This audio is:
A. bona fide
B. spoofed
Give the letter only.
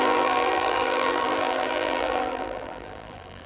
B